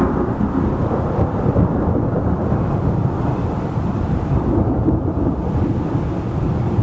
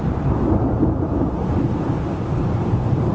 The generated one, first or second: first